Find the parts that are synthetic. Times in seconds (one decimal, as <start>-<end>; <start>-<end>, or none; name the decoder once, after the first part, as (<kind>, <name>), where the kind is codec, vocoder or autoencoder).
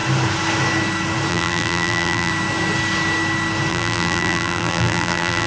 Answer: 1.3-2.3 (vocoder, BigVGAN v2); 3.7-5.5